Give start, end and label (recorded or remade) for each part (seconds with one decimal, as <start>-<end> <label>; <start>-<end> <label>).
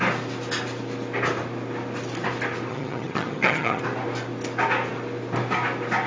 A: 0.0-2.7 recorded; 2.7-3.8 remade; 3.8-6.1 recorded